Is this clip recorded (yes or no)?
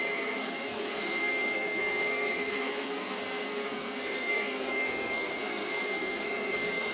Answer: no